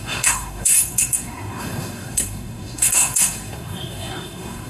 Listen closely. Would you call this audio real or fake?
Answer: fake